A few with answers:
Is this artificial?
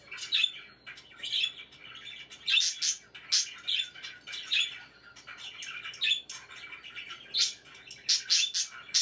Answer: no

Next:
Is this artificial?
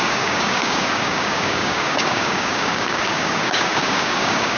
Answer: yes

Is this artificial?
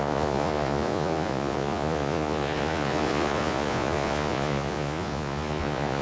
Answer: yes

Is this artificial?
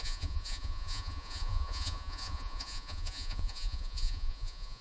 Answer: yes